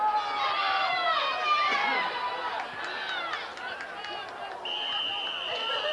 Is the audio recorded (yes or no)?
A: yes